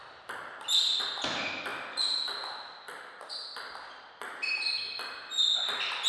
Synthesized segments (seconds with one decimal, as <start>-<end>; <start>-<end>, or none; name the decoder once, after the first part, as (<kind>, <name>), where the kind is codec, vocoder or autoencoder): none